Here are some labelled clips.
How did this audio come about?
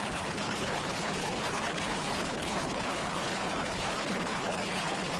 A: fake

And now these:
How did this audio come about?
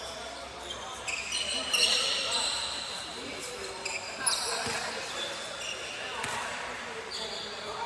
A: real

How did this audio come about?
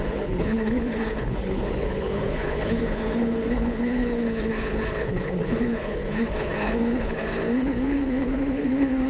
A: fake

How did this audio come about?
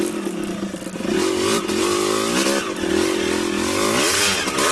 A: real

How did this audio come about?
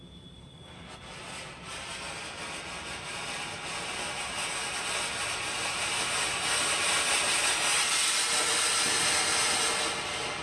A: real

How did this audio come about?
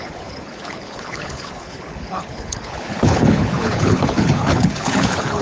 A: fake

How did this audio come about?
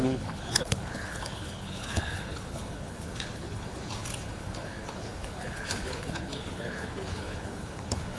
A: fake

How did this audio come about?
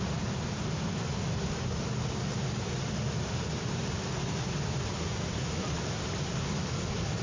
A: real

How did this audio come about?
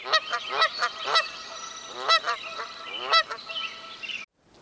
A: real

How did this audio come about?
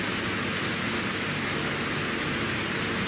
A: real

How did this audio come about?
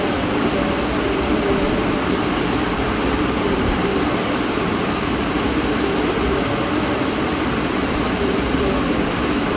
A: real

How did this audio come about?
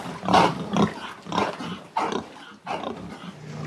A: real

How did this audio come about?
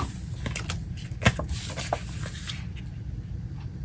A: real